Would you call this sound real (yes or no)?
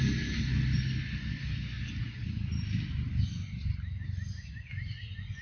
yes